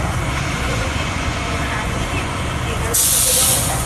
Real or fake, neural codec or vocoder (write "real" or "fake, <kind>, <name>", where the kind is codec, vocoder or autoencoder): fake, vocoder, Vocos